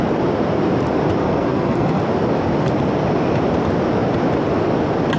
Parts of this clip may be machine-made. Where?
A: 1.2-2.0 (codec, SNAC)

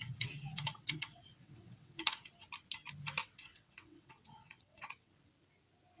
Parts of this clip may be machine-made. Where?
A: 0.0-2.3 (vocoder, WaveNeXt); 3.2-5.1